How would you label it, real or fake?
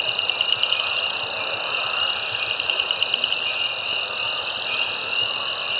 real